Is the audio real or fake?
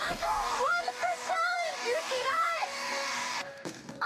fake